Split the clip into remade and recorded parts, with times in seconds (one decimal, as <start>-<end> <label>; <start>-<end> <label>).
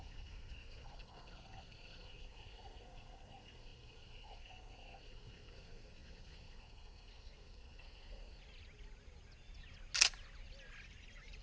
0.0-8.4 remade; 8.4-11.4 recorded